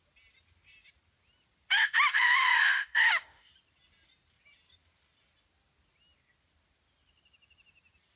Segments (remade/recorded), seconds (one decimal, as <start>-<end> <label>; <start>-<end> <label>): 0.0-1.7 recorded; 1.7-3.5 remade; 3.5-8.2 recorded